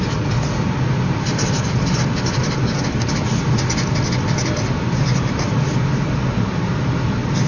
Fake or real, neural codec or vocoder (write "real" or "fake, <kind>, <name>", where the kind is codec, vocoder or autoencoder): real